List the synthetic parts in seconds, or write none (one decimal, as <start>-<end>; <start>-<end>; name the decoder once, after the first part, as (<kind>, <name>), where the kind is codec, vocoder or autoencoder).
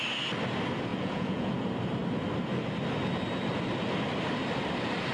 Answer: 0.9-1.5 (vocoder, Vocos)